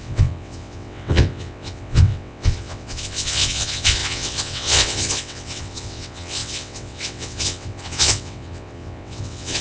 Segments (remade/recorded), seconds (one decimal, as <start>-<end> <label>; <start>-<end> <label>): 0.0-9.6 remade